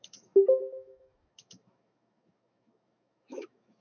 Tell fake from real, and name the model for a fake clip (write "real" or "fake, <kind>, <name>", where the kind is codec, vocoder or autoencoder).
fake, autoencoder, DAC-VAE